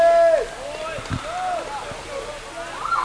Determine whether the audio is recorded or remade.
recorded